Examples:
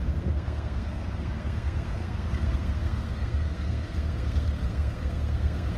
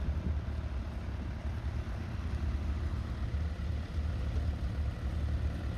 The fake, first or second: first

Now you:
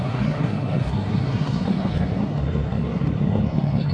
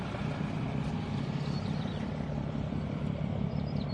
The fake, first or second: first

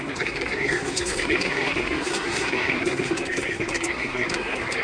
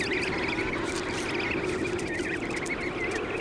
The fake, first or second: first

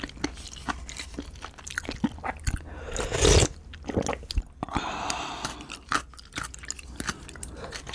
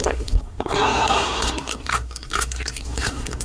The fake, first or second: second